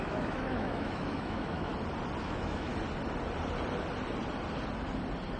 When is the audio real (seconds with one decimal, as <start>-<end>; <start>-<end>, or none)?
1.7-2.2; 2.7-5.4